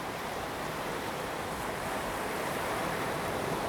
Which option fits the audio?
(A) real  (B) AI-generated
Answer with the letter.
B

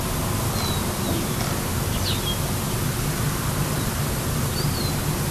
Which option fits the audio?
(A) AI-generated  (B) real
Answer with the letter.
B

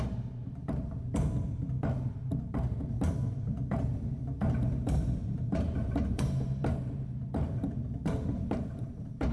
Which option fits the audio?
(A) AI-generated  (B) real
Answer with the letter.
A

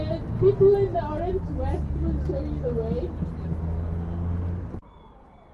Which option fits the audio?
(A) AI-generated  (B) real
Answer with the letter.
B